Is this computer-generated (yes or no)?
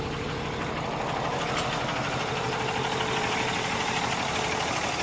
yes